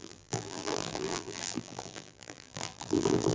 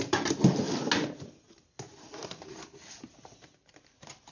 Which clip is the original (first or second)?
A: second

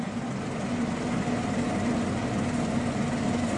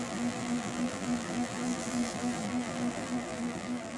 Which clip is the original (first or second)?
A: first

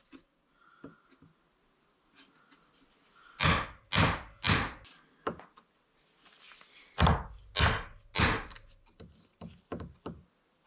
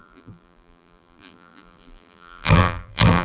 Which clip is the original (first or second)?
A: first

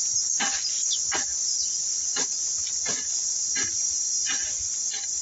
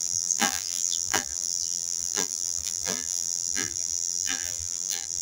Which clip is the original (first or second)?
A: first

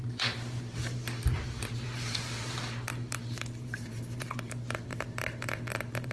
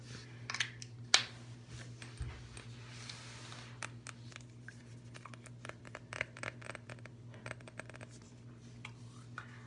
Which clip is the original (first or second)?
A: second